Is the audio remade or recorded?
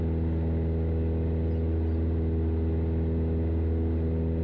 recorded